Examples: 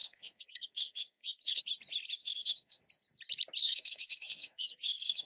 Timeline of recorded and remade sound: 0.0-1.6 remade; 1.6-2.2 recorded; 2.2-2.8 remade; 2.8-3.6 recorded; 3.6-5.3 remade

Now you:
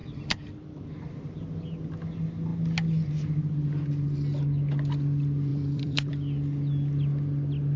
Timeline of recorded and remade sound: 0.0-5.5 recorded; 5.5-6.1 remade; 6.1-7.8 recorded

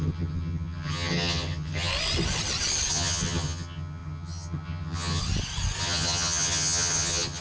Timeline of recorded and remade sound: 0.0-1.9 remade; 1.9-2.9 recorded; 2.9-5.2 remade; 5.2-5.8 recorded; 5.8-7.4 remade

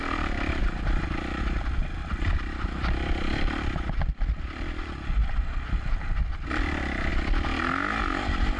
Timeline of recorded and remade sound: 0.0-0.6 recorded; 0.6-1.4 remade; 1.4-2.0 recorded; 2.0-4.4 remade; 4.4-8.6 recorded

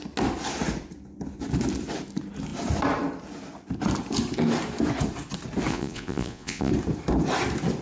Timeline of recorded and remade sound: 0.0-5.7 recorded; 5.7-6.7 remade; 6.7-7.8 recorded

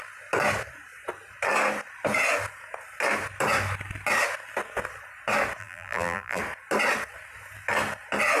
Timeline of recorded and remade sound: 0.0-5.6 recorded; 5.6-6.4 remade; 6.4-8.4 recorded

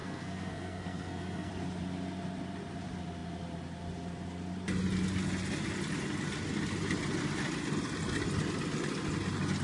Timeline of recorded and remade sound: 0.0-1.5 remade; 1.5-9.6 recorded

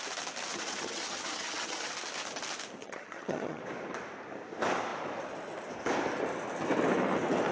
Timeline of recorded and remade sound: 0.0-0.5 recorded; 0.5-1.9 remade; 1.9-2.8 recorded; 2.8-3.6 remade; 3.6-7.5 recorded